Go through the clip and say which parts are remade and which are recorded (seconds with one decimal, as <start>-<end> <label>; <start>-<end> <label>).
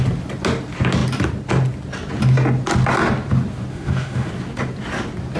0.0-3.7 recorded; 3.7-4.3 remade; 4.3-5.4 recorded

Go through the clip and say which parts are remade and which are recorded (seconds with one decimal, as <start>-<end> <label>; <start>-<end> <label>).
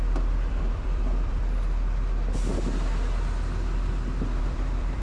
0.0-1.4 remade; 1.4-4.4 recorded; 4.4-5.0 remade